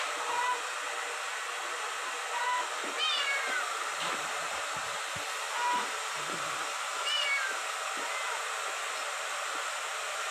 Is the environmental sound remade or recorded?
recorded